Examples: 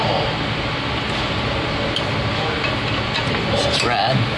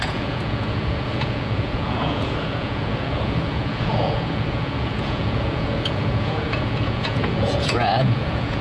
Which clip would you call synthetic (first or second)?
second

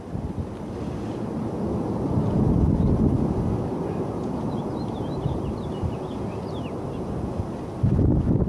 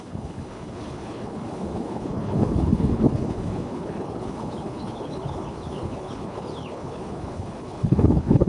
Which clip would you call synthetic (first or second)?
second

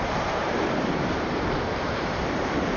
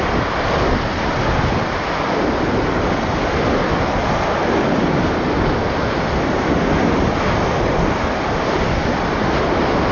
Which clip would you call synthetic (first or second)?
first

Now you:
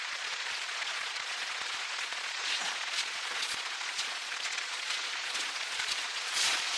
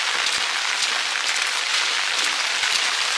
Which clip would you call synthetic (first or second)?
first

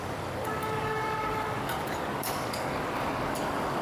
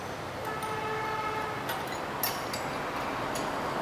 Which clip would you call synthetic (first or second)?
first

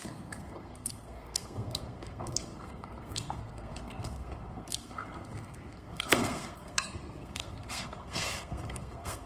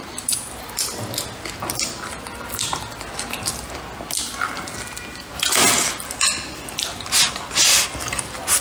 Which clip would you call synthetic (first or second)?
first